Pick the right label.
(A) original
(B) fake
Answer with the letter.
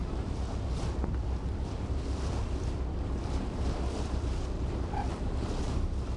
A